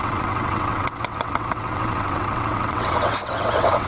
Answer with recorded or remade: remade